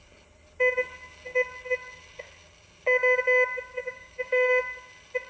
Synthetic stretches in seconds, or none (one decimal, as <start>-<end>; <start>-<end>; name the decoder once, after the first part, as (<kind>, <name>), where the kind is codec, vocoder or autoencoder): 3.8-4.6 (codec, DAC)

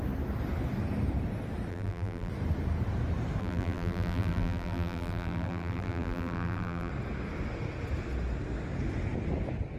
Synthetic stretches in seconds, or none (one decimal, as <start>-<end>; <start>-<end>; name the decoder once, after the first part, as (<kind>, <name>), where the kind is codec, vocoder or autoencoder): 1.7-2.3 (vocoder, BigVGAN v2); 3.4-6.9

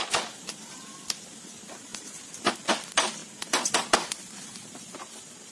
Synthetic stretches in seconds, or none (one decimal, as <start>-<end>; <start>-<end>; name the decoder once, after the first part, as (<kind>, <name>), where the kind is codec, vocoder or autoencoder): 0.0-1.9 (vocoder, BigVGAN v2); 2.4-5.5

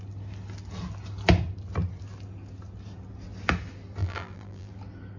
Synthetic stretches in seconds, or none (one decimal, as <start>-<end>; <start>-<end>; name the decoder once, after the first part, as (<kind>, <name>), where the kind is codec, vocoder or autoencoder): 4.0-4.7 (vocoder, BigVGAN v2)

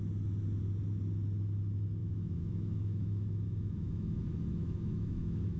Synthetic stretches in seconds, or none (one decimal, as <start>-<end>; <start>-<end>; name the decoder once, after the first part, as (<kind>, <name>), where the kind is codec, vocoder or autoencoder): 2.0-5.6 (autoencoder, DAC-VAE)

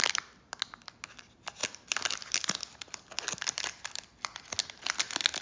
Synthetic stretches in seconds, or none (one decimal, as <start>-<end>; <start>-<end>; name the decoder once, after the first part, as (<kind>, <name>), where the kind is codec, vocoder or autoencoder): none

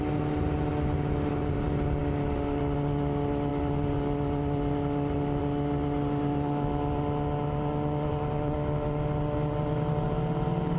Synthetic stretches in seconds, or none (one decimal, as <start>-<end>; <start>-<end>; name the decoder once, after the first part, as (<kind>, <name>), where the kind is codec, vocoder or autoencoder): none

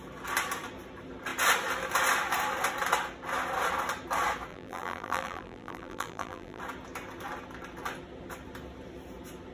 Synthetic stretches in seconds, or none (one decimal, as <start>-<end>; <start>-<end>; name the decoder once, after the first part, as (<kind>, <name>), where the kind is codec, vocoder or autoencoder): 4.5-6.6 (vocoder, BigVGAN v2)